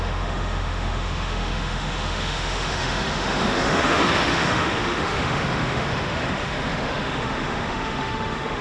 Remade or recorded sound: remade